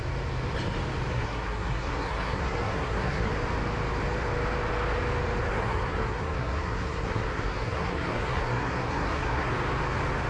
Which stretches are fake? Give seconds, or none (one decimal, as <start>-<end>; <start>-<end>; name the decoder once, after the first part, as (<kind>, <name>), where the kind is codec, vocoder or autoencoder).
1.1-3.3 (codec, SNAC); 5.5-9.5